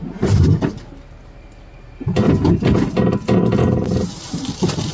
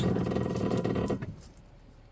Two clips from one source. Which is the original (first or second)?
first